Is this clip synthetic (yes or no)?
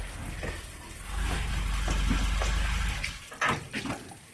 no